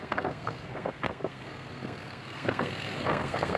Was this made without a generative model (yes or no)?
no